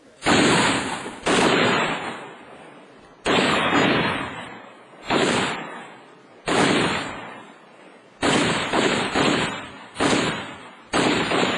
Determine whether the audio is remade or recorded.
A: recorded